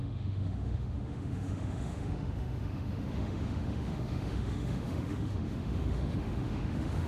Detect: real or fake fake